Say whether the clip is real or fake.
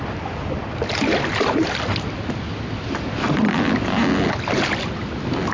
real